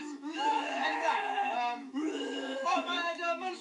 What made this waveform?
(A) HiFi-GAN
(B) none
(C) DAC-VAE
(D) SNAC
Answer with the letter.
C